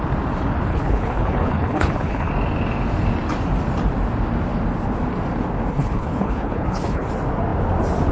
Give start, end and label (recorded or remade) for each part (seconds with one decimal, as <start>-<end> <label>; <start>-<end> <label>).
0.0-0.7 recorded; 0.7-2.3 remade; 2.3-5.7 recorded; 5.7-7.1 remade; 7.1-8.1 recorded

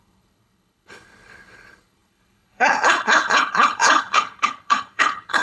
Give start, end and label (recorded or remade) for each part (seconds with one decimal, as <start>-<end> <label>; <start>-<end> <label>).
0.0-5.4 remade

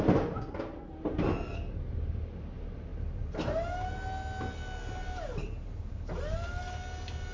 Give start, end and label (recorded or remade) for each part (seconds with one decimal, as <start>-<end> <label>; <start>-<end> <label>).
0.0-7.3 recorded

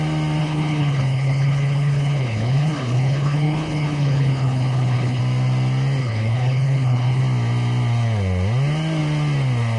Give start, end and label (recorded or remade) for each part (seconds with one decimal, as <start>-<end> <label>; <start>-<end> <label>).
0.0-0.4 recorded; 0.4-5.2 remade; 5.2-6.0 recorded; 6.0-7.2 remade; 7.2-9.8 recorded

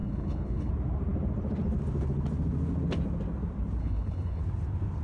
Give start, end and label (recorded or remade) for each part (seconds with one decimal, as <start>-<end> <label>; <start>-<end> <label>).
0.0-0.7 remade; 0.7-3.8 recorded; 3.8-4.4 remade; 4.4-5.0 recorded